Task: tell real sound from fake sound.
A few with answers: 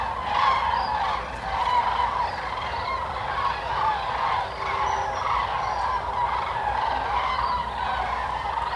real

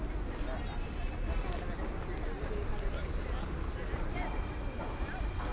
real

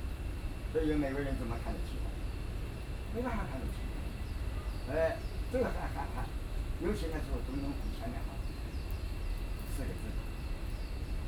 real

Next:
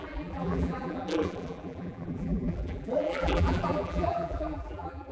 fake